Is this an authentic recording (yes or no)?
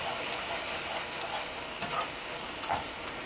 yes